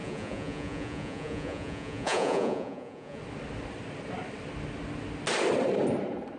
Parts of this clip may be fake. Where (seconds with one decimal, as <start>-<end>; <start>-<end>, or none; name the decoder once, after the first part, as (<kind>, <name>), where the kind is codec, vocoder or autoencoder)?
0.0-3.2 (vocoder, Vocos)